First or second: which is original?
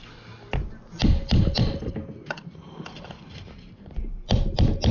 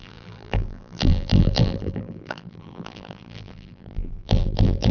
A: first